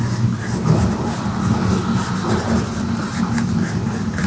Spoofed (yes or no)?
no